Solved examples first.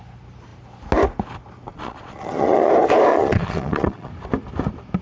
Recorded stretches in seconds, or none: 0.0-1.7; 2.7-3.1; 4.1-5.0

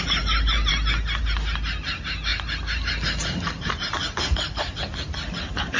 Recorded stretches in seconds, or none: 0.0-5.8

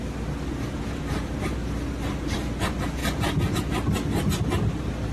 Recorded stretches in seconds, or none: 0.0-0.5; 1.0-3.0; 3.6-5.1

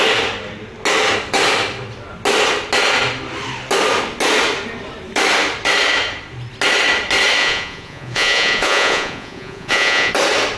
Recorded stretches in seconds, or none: 0.0-7.4; 10.1-10.6

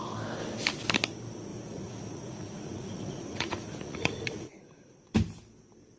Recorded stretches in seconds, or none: 0.0-1.5; 5.1-6.0

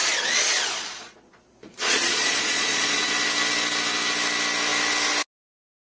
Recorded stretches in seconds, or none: 3.1-5.9

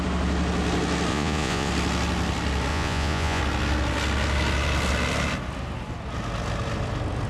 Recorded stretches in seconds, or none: 0.0-1.1; 1.7-2.7; 3.4-7.3

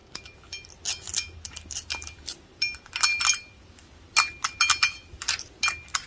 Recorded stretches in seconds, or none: 0.0-6.1